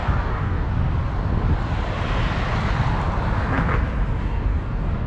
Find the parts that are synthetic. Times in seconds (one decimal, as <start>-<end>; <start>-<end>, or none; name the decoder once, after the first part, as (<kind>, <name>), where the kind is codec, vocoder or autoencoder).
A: 0.0-0.7 (codec, DAC); 4.2-5.1